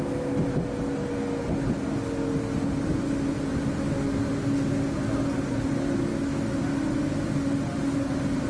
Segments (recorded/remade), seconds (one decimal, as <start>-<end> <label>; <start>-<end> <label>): 0.0-6.1 recorded; 6.1-6.6 remade; 6.6-8.5 recorded